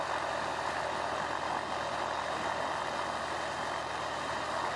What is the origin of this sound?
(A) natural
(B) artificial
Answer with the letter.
A